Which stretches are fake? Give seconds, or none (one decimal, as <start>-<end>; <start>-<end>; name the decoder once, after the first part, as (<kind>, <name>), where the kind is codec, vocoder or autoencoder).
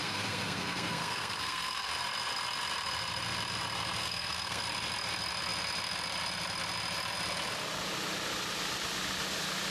0.0-1.9 (codec, SNAC); 4.0-4.6